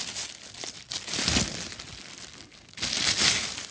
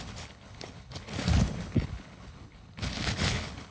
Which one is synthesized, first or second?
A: second